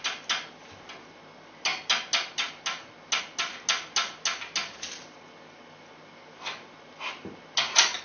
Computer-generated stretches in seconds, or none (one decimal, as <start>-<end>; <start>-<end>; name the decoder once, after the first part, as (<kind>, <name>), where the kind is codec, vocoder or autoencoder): none